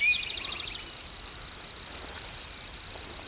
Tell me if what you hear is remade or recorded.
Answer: recorded